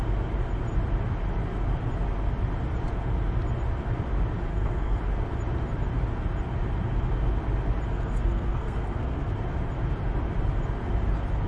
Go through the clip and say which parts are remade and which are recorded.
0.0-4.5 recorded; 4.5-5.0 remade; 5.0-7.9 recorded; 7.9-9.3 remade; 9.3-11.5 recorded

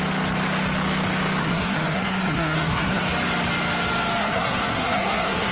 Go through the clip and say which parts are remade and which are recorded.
0.0-1.4 recorded; 1.4-3.0 remade; 3.0-4.2 recorded; 4.2-5.5 remade

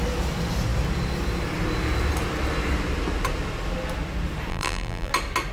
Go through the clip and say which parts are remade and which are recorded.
0.0-4.5 recorded; 4.5-5.1 remade; 5.1-5.5 recorded